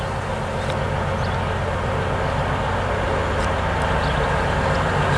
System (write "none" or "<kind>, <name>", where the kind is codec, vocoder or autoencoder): none